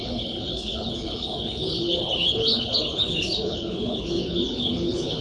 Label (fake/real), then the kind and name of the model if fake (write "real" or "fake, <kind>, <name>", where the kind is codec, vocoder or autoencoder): fake, codec, HILCodec